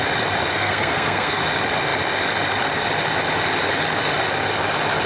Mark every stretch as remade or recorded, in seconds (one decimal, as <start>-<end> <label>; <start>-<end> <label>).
0.0-0.5 recorded; 0.5-1.4 remade; 1.4-5.1 recorded